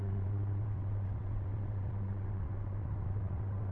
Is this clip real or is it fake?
fake